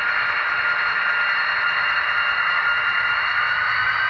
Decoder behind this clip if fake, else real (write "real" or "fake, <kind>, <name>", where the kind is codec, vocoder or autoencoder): real